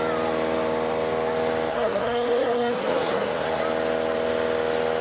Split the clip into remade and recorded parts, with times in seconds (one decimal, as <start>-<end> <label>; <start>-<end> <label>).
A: 0.0-1.7 recorded; 1.7-3.6 remade; 3.6-5.0 recorded